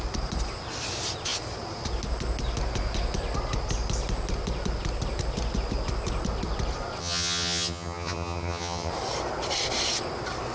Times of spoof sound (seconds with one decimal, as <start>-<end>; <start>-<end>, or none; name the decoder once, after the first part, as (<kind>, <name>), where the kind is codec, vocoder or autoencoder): 7.0-8.9 (vocoder, HiFi-GAN)

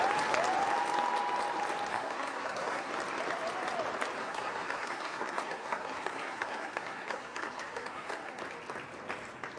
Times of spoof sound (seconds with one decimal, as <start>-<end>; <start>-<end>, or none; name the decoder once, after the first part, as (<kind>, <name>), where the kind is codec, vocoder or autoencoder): 1.9-2.9 (codec, SNAC); 4.2-8.4

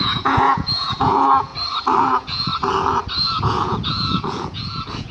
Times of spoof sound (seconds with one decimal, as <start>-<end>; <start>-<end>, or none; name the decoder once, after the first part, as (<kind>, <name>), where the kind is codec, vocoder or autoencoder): 0.0-1.5 (vocoder, Vocos); 2.0-2.5; 3.4-5.1

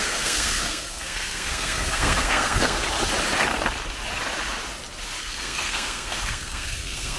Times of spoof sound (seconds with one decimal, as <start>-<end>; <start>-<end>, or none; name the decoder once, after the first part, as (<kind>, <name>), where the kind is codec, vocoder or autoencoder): 0.0-2.8 (codec, SNAC); 5.2-7.2

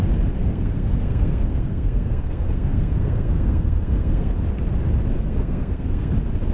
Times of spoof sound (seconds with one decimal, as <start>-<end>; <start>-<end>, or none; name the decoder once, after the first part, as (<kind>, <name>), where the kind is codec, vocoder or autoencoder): 0.4-4.3 (codec, SNAC); 5.1-6.1

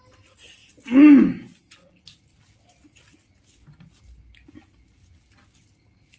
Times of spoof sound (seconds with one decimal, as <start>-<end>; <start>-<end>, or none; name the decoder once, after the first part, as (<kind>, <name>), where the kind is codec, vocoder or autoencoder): none